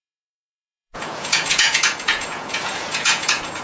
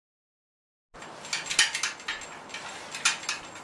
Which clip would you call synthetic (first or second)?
first